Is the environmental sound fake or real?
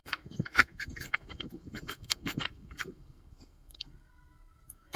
fake